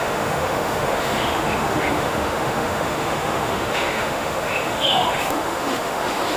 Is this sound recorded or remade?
remade